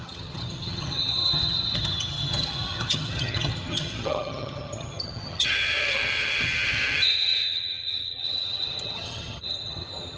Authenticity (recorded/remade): remade